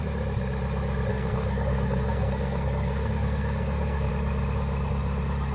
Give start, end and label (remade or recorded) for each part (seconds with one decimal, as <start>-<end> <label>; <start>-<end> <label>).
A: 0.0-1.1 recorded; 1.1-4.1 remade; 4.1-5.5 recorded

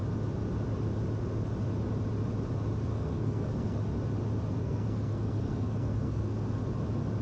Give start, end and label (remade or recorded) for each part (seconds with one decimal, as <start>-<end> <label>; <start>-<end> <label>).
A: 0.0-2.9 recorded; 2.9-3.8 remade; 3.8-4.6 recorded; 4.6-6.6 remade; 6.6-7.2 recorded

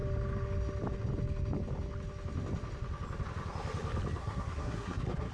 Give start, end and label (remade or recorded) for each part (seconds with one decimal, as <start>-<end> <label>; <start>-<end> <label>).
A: 0.0-4.2 recorded; 4.2-5.3 remade

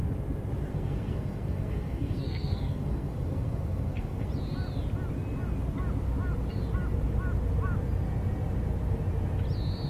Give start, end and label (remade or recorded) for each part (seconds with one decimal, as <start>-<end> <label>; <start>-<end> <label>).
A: 0.0-0.7 recorded; 0.7-4.3 remade; 4.3-9.9 recorded

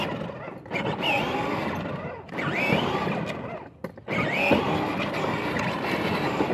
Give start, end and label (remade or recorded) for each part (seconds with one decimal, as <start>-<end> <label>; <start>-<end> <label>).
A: 0.0-6.5 recorded